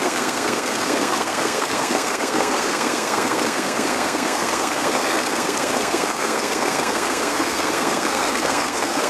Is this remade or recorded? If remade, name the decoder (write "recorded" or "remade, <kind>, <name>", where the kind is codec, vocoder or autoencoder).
remade, codec, SNAC